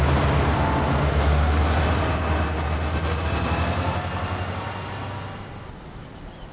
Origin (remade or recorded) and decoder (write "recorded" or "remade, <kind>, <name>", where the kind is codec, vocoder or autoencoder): recorded